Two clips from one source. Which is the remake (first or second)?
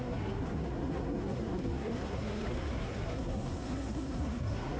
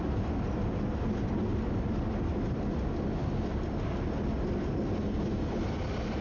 first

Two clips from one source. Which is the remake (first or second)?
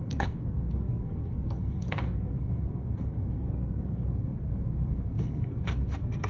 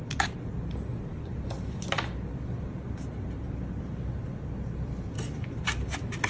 first